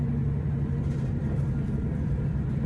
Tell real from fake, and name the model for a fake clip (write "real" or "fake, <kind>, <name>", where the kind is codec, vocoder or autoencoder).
fake, vocoder, BigVGAN v2